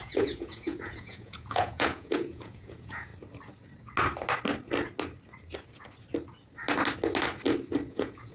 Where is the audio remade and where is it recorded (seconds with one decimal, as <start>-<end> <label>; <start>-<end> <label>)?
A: 0.0-3.1 remade; 3.1-7.9 recorded; 7.9-8.3 remade